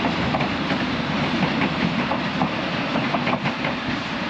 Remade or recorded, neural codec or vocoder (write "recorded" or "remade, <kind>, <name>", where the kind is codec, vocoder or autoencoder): remade, vocoder, BigVGAN v2